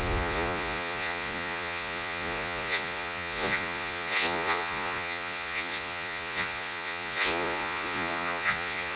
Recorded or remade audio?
remade